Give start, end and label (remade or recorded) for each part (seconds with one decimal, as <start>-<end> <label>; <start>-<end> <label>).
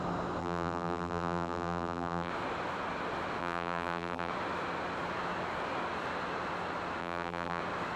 0.0-0.4 recorded; 0.4-2.3 remade; 2.3-3.4 recorded; 3.4-4.3 remade; 4.3-7.0 recorded; 7.0-7.6 remade; 7.6-8.0 recorded